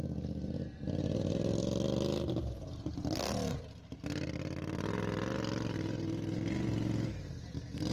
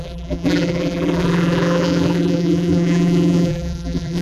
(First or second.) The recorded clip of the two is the first